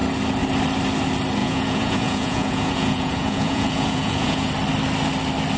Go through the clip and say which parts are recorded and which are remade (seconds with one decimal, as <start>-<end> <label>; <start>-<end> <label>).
0.0-1.4 recorded; 1.4-4.5 remade; 4.5-5.6 recorded